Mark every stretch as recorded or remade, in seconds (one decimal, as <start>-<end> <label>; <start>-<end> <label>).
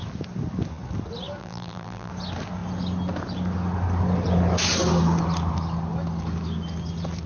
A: 0.0-1.4 recorded; 1.4-2.1 remade; 2.1-7.3 recorded